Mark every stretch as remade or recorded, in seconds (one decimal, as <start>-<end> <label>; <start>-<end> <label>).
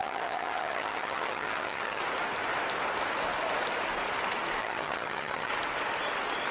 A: 0.0-2.0 remade; 2.0-4.6 recorded; 4.6-5.5 remade; 5.5-6.5 recorded